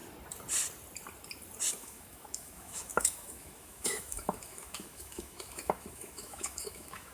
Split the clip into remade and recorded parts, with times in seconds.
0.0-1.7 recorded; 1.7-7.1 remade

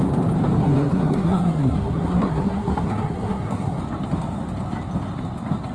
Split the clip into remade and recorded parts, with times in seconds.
0.0-0.6 recorded; 0.6-3.8 remade; 3.8-5.7 recorded

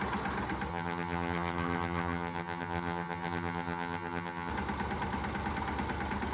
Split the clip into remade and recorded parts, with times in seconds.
0.0-0.7 recorded; 0.7-4.5 remade; 4.5-6.3 recorded

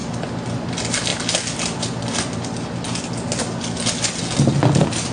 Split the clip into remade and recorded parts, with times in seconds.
0.0-5.1 recorded